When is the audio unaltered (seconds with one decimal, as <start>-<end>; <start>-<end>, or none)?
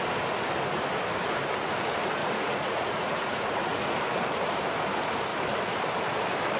0.0-2.2; 4.0-6.6